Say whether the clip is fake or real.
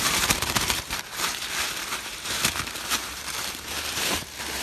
fake